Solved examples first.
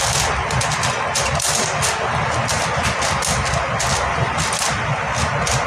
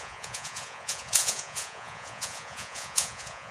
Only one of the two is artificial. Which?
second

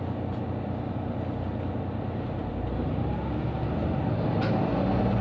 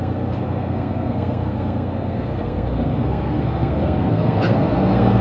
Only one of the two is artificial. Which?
second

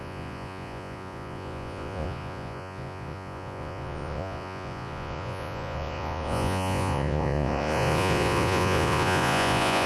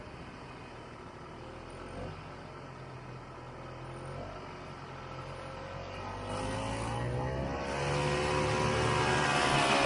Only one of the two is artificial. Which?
first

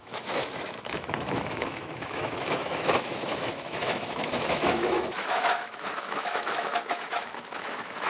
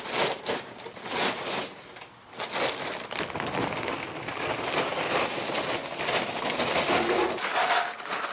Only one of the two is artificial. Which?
first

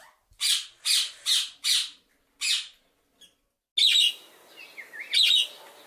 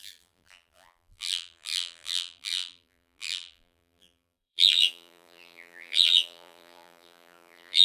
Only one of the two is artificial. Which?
second